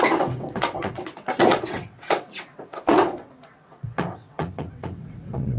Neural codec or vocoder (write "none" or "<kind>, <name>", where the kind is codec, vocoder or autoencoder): vocoder, WaveNeXt